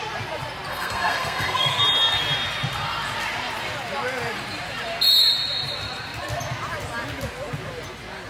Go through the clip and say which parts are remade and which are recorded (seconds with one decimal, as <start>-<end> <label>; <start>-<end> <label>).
0.0-0.7 recorded; 0.7-1.8 remade; 1.8-8.3 recorded